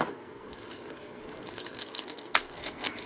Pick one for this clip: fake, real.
fake